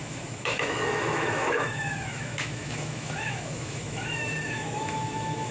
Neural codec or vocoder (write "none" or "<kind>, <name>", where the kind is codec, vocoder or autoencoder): autoencoder, DAC-VAE